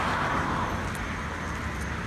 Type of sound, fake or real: real